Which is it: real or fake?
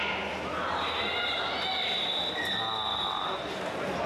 real